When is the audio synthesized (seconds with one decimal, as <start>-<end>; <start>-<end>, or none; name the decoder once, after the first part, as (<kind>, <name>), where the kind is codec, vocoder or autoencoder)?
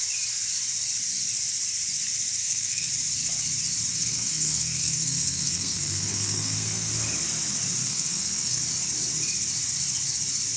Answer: 2.4-2.9 (codec, SNAC); 3.9-6.9; 7.8-8.6